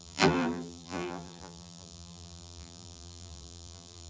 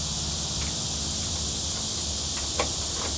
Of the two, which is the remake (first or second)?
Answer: first